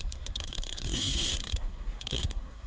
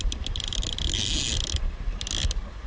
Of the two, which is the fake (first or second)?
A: first